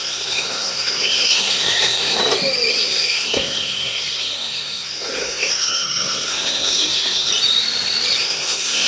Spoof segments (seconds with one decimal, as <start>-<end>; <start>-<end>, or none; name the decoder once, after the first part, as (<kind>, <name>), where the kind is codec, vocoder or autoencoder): 0.0-2.2 (codec, SNAC); 2.7-7.3; 8.2-8.9